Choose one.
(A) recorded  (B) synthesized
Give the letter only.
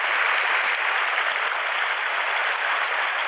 A